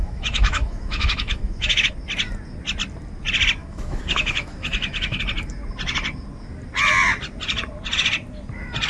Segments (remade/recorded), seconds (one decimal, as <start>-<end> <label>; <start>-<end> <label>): 0.0-1.9 remade; 1.9-3.6 recorded; 3.6-5.2 remade; 5.2-8.9 recorded